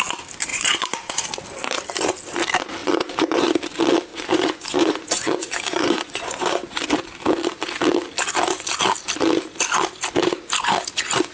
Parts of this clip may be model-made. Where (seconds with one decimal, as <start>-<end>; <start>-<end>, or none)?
0.5-1.1; 2.8-3.5; 4.1-6.8